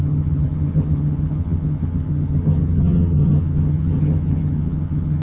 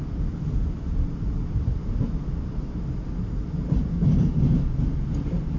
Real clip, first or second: second